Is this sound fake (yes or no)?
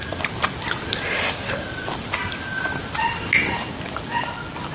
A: no